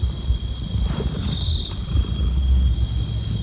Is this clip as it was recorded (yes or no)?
yes